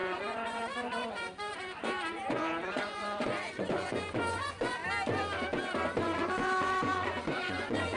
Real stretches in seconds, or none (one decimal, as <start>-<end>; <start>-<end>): 4.8-6.0